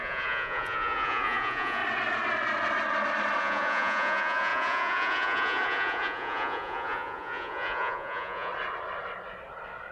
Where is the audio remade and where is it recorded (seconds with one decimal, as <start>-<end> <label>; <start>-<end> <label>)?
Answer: 0.0-1.8 remade; 1.8-3.4 recorded; 3.4-8.5 remade; 8.5-9.9 recorded